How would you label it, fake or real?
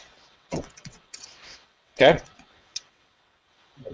fake